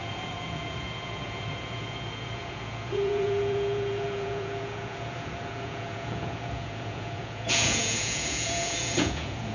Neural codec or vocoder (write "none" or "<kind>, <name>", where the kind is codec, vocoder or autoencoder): vocoder, Vocos